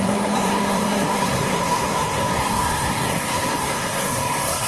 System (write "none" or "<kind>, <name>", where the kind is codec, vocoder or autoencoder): codec, SNAC